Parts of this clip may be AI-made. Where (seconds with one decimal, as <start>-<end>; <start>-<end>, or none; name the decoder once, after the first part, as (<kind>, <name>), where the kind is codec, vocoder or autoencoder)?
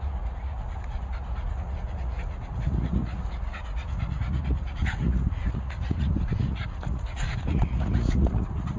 0.0-8.8 (vocoder, Vocos)